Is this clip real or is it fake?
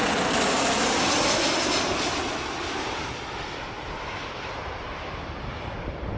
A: fake